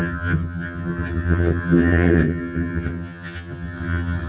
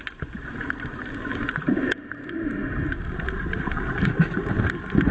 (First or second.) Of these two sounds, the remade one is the first